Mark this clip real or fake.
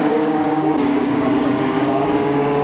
fake